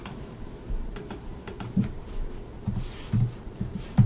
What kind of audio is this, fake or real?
fake